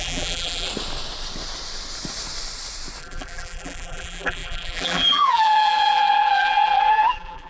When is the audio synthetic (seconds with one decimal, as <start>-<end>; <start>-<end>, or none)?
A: 0.0-0.7; 3.0-7.5